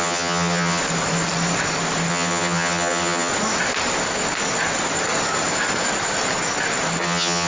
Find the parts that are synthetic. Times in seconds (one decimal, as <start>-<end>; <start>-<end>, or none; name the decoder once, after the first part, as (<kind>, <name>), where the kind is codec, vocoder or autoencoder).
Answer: 0.0-0.8 (vocoder, HiFi-GAN); 2.1-3.3; 7.0-7.5